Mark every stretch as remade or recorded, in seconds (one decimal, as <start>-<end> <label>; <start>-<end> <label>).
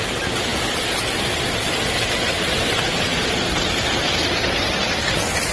0.0-5.5 recorded